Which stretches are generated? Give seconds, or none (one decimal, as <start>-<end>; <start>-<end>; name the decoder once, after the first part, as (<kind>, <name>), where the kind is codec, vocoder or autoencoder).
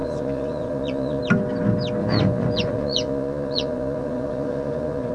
0.0-1.2 (vocoder, Vocos); 2.0-5.1